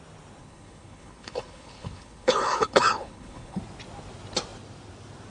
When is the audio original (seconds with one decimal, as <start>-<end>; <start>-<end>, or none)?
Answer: 0.0-0.4; 3.6-5.3